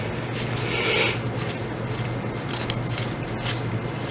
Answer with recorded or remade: recorded